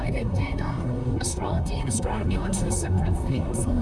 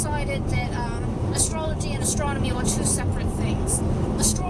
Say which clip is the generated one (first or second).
first